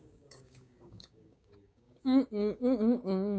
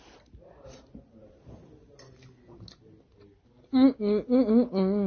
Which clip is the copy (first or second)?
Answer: first